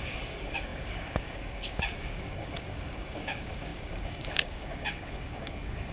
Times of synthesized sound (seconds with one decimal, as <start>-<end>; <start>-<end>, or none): 0.0-5.9